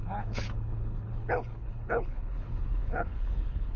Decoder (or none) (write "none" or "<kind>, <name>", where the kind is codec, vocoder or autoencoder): codec, HILCodec